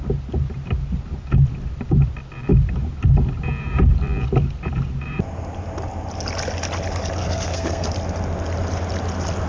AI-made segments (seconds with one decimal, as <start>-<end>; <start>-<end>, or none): 7.2-7.9